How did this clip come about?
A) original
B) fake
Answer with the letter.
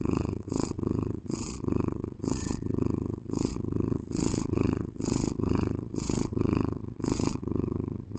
B